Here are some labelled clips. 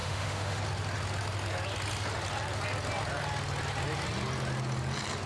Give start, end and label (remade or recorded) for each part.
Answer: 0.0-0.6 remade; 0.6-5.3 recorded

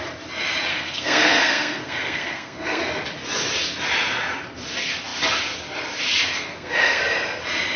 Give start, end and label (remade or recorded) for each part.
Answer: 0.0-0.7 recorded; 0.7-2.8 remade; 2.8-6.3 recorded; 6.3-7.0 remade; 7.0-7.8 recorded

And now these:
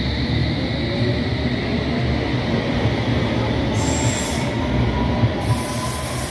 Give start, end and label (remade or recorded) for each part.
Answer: 0.0-6.3 recorded